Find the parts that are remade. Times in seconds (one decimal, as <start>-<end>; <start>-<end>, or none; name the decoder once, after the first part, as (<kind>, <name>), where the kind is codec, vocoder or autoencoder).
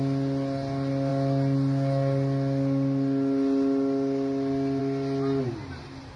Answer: none